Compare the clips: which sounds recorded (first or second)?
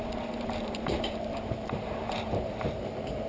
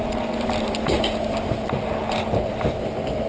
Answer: second